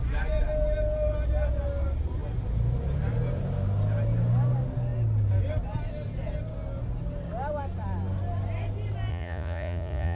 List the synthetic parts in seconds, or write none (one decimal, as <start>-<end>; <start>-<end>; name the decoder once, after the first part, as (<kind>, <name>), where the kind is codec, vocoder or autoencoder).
9.1-10.2 (vocoder, Vocos)